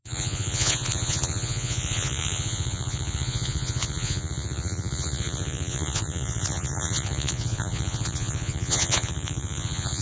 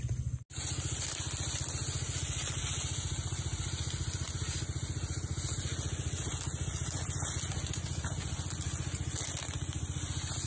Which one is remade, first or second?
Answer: first